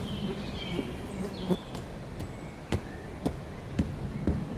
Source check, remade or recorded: recorded